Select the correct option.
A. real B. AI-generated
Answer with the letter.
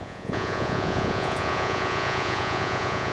B